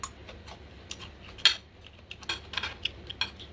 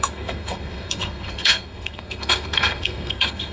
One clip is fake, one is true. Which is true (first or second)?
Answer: first